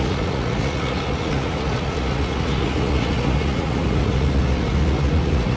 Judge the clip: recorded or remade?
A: remade